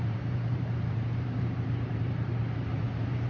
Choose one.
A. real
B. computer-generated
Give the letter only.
B